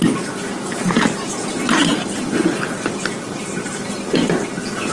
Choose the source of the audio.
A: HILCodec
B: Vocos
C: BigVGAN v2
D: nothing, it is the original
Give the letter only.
D